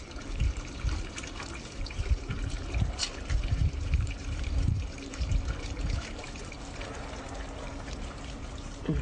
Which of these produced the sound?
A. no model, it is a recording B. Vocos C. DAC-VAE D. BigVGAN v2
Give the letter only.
D